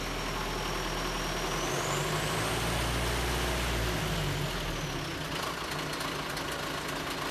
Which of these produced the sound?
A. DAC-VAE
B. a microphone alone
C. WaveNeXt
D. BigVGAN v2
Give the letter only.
B